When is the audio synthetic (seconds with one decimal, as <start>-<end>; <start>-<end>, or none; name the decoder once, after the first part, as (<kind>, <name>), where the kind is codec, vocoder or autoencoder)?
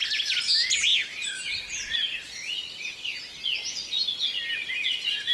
none